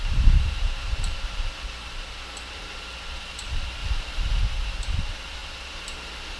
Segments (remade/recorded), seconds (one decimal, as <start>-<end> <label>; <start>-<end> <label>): 0.0-3.8 remade; 3.8-4.4 recorded; 4.4-6.4 remade